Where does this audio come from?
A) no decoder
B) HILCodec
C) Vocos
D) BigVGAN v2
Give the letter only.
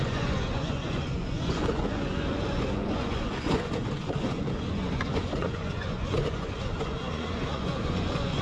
C